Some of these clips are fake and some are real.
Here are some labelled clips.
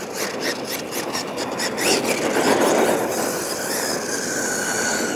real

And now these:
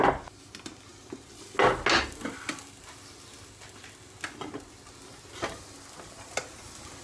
real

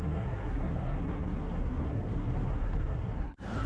fake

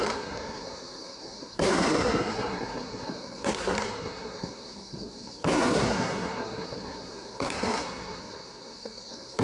fake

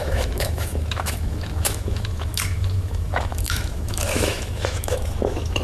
fake